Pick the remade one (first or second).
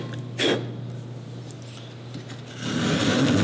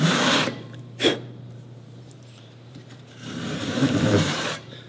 second